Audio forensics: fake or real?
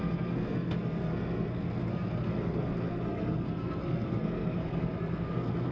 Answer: fake